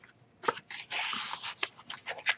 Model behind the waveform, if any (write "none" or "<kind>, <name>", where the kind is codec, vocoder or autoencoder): none